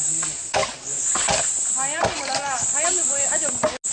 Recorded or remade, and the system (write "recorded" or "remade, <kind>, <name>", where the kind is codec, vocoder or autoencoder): recorded